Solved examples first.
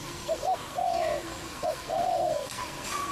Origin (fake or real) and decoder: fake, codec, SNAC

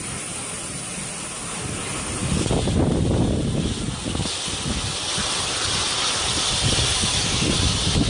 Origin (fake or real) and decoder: real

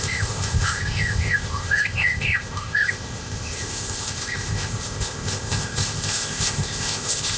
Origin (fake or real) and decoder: fake, codec, ZipCodec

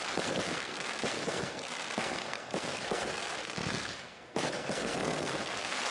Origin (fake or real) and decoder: fake, codec, SNAC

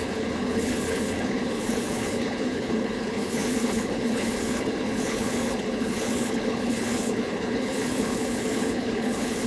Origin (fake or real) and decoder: fake, codec, HILCodec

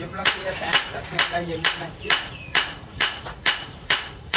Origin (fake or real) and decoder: fake, vocoder, Vocos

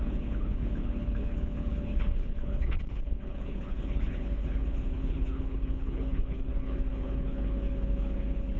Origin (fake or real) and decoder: fake, codec, HILCodec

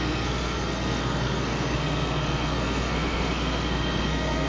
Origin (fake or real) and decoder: fake, codec, SNAC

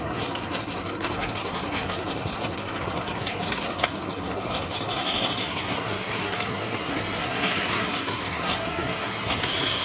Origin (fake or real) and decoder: fake, codec, SNAC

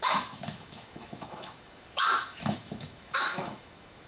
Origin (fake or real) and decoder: fake, autoencoder, DAC-VAE